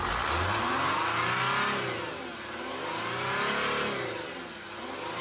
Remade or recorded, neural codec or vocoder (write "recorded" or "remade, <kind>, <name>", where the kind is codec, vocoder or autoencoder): recorded